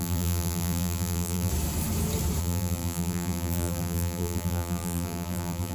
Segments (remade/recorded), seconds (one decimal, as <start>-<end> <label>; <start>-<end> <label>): 0.0-1.5 remade; 1.5-2.4 recorded; 2.4-5.7 remade